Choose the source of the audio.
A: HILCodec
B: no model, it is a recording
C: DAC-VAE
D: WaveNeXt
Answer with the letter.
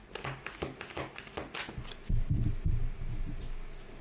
B